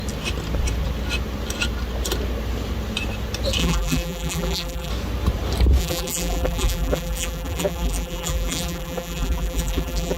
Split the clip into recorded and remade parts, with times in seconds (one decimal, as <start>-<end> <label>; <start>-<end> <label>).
0.0-3.6 recorded; 3.6-4.9 remade; 4.9-5.8 recorded; 5.8-10.2 remade